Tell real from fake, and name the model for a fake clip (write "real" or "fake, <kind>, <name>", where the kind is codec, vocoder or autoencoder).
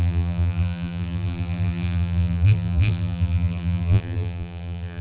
fake, vocoder, BigVGAN v2